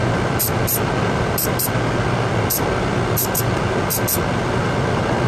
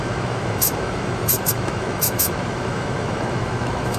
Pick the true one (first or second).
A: first